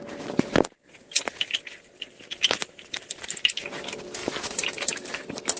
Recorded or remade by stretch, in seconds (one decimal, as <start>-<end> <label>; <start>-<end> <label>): 0.0-4.2 recorded; 4.2-5.6 remade